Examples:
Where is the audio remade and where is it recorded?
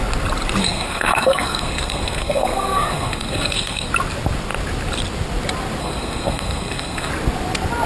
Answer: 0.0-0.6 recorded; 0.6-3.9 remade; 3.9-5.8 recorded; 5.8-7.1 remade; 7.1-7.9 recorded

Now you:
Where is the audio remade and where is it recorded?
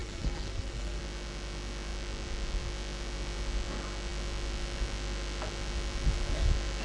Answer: 0.0-1.0 remade; 1.0-6.8 recorded